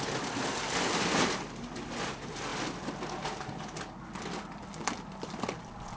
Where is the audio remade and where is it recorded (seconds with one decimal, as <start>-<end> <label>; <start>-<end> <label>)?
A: 0.0-6.0 recorded